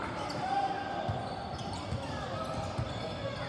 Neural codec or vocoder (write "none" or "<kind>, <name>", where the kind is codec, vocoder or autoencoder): none